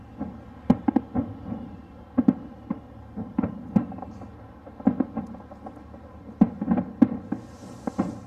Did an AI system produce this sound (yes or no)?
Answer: no